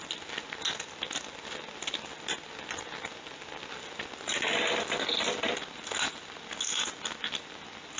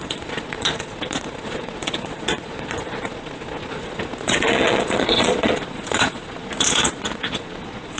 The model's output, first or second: second